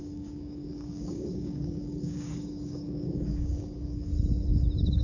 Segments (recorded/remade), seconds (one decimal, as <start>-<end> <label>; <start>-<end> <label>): 0.0-4.1 remade; 4.1-5.0 recorded